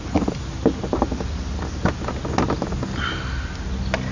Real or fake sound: real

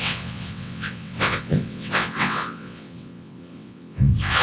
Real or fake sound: fake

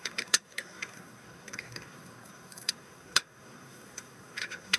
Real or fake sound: fake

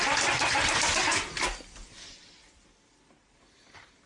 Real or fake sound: fake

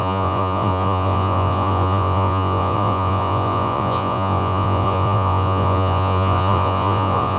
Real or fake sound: fake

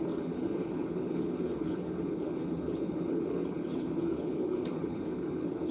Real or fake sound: fake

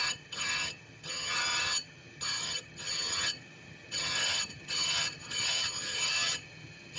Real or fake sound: fake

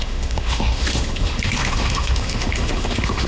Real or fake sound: fake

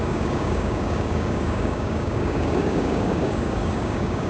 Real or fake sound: fake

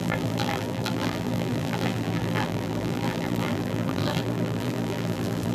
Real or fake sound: fake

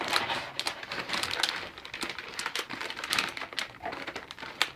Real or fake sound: fake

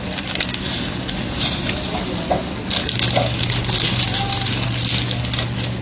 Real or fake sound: real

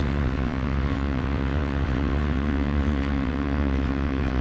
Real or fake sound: fake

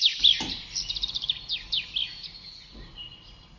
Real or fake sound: real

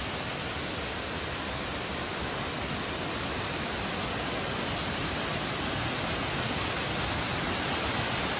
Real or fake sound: real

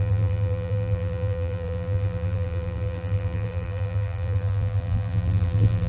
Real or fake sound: fake